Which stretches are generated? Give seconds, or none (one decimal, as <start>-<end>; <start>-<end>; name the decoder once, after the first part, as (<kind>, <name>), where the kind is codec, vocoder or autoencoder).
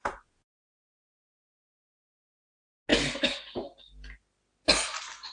0.0-1.5 (vocoder, Vocos)